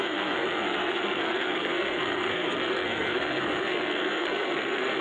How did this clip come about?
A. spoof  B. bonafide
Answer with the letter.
A